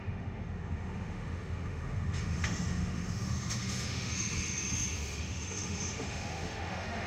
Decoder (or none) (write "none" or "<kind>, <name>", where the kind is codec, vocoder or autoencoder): autoencoder, DAC-VAE